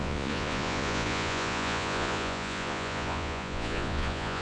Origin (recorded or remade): remade